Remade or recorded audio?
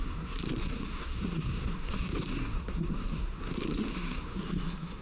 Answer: remade